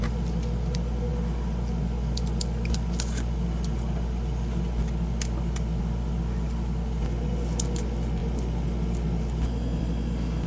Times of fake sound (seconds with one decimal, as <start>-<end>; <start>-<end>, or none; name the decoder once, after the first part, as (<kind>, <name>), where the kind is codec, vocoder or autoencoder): none